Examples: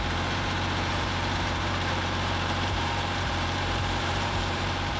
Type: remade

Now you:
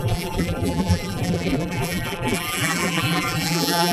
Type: remade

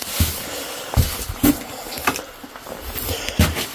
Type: recorded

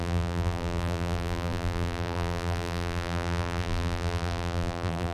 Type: remade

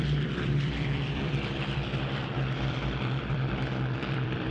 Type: remade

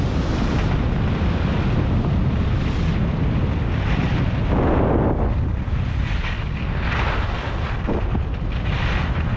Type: recorded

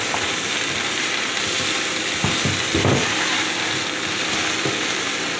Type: recorded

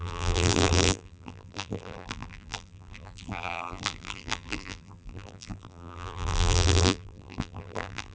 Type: remade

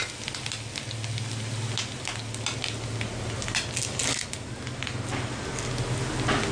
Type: recorded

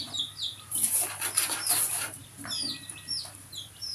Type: remade